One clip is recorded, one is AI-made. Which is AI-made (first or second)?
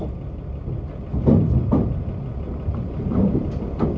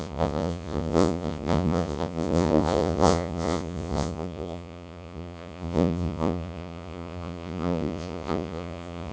second